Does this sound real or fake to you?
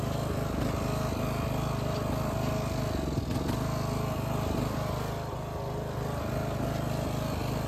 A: fake